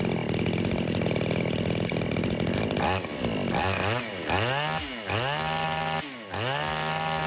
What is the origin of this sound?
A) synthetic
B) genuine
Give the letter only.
B